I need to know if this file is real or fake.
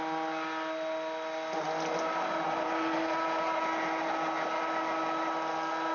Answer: real